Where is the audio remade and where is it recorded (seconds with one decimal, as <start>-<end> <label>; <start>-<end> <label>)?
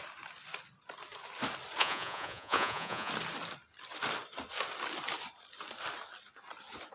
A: 0.0-1.8 recorded; 1.8-3.1 remade; 3.1-6.9 recorded